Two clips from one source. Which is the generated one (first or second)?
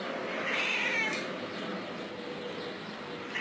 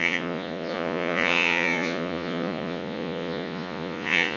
second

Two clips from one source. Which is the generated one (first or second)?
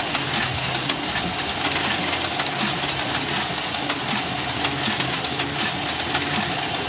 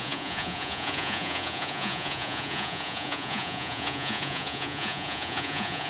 second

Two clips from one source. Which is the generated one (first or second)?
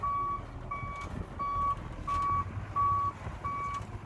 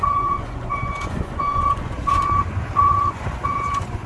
second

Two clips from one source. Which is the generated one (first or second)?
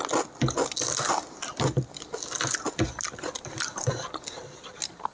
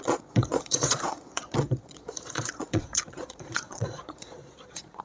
second